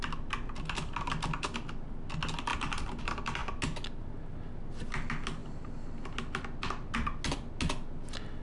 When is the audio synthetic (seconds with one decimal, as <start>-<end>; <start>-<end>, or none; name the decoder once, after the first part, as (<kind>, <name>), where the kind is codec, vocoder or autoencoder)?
none